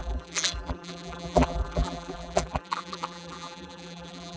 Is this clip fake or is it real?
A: fake